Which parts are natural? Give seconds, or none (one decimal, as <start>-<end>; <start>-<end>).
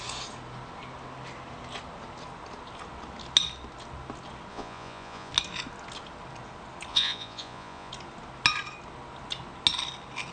0.0-4.5; 5.3-6.9; 7.9-10.3